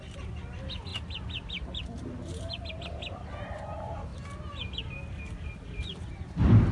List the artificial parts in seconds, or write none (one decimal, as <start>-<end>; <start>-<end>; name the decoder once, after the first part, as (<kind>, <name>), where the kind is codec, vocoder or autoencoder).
none